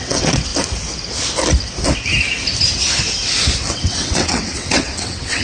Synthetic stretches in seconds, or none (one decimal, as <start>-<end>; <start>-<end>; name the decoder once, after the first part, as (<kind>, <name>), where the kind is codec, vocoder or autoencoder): 0.0-0.5 (vocoder, WaveNeXt); 3.7-5.4